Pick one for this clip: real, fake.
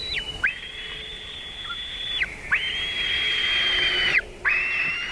real